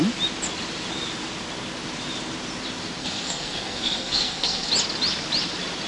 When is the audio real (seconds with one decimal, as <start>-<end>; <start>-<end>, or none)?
0.0-3.0; 4.7-5.9